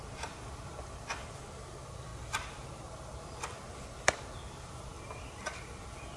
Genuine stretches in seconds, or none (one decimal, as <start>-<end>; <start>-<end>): none